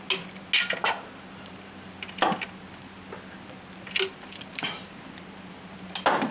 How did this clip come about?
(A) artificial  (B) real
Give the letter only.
B